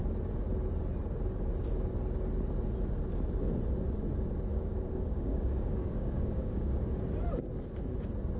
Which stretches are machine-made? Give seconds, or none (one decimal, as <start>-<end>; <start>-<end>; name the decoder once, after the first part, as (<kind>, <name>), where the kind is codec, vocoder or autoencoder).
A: 4.5-6.9 (codec, DAC)